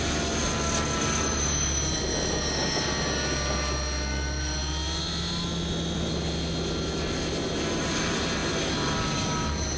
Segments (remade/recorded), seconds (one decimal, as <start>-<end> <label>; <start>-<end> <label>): 0.0-9.8 recorded